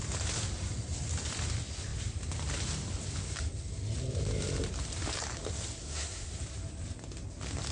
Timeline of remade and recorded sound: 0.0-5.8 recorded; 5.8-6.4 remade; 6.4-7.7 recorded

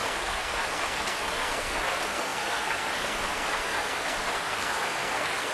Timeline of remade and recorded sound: 0.0-5.5 remade

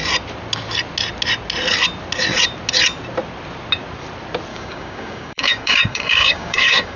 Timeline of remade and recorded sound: 0.0-4.5 recorded; 4.5-7.0 remade

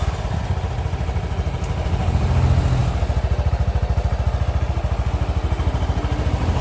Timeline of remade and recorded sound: 0.0-6.6 recorded

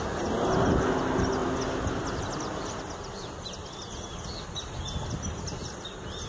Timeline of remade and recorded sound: 0.0-6.3 recorded

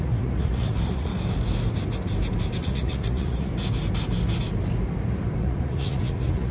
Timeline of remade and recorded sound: 0.0-1.1 remade; 1.1-2.6 recorded; 2.6-3.5 remade; 3.5-5.4 recorded; 5.4-6.5 remade